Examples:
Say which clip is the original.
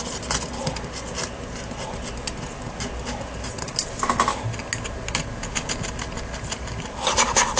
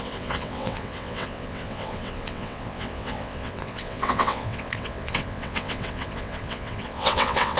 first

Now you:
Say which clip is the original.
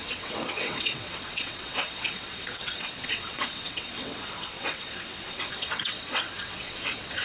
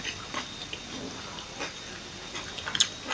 second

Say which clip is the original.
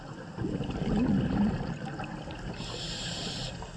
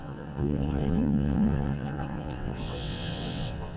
first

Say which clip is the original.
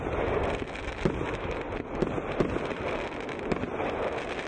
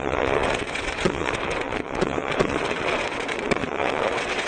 first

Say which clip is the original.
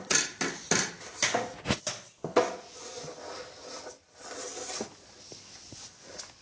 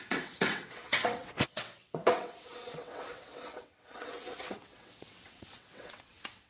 first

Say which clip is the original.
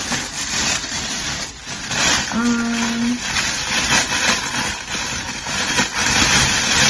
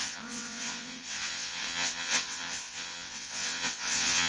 first